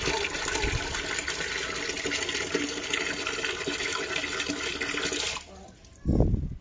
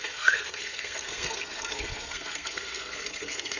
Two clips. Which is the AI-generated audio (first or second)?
second